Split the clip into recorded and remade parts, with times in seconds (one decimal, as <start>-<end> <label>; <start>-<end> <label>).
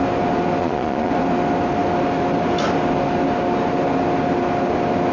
0.0-0.6 recorded; 0.6-1.1 remade; 1.1-5.1 recorded